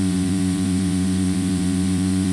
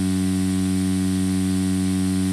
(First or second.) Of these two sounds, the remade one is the first